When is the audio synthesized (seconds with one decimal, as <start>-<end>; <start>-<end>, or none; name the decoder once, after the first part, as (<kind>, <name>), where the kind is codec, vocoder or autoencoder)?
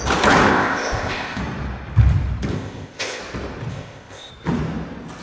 0.5-1.4 (codec, ZipCodec); 2.5-3.2; 3.7-4.3